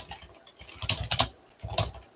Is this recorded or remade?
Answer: recorded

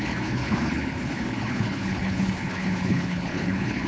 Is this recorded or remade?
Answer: remade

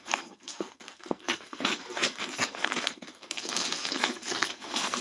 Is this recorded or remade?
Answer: remade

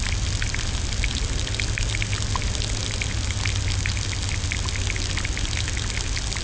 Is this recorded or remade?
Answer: recorded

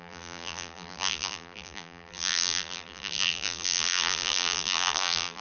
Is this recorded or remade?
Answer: remade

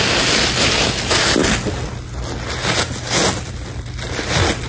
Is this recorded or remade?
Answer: recorded